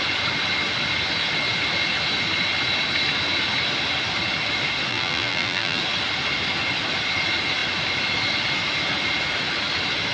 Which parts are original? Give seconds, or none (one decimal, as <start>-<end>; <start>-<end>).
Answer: 0.0-4.9; 5.8-10.1